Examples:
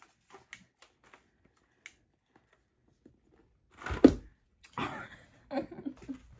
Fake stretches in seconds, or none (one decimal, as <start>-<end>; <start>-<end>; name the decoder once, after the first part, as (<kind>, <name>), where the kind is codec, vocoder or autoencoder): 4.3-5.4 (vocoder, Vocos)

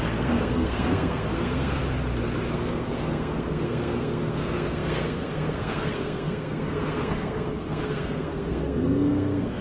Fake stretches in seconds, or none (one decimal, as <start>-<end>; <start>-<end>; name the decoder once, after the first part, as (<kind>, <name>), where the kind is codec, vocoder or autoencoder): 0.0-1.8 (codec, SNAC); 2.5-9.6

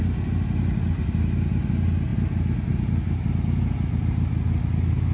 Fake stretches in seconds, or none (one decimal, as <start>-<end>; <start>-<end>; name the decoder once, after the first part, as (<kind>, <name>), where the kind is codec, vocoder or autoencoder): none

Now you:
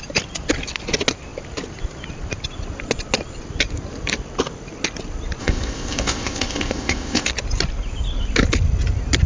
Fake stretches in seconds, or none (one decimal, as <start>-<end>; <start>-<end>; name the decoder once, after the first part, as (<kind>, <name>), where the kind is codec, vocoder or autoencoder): 5.4-7.3 (codec, ZipCodec)

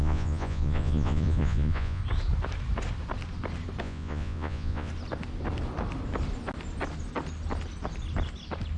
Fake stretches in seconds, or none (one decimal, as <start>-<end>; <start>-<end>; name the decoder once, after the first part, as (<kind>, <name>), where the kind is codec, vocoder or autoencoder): 0.0-2.0 (vocoder, Vocos); 3.8-4.9

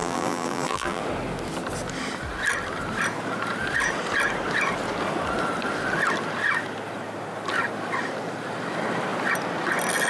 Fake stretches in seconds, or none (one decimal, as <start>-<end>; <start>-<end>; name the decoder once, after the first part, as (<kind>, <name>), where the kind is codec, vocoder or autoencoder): 0.0-1.0 (vocoder, BigVGAN v2)